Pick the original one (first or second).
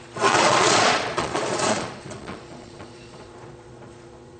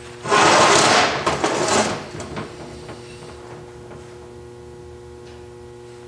second